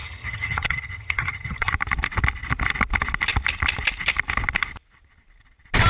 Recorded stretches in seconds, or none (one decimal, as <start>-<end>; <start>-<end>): 1.7-5.9